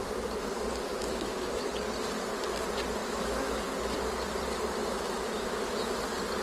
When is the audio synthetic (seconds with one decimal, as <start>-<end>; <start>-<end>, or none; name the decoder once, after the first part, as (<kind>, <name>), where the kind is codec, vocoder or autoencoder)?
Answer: 0.9-1.7 (autoencoder, DAC-VAE); 3.0-3.7; 4.8-5.6